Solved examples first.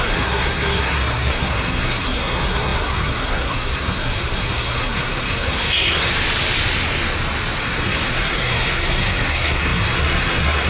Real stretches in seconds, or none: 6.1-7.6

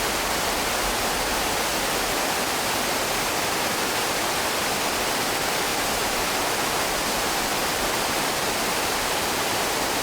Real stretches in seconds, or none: 1.7-4.5; 5.7-6.7

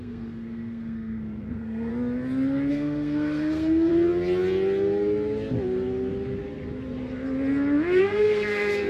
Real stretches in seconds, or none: 1.9-2.7; 3.9-8.0

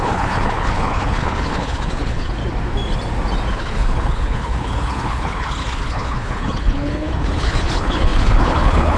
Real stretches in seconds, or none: 2.4-3.5

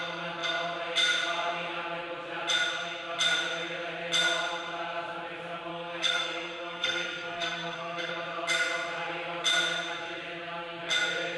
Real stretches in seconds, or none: 0.0-5.7; 8.1-11.4

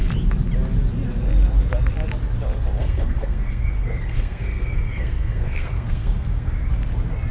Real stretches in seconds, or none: 0.0-2.8; 6.5-7.3

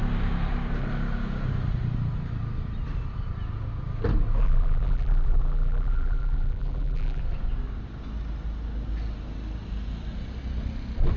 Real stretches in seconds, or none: 0.0-4.4; 7.2-11.2